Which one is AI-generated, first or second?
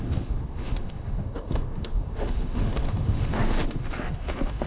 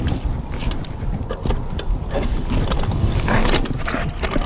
first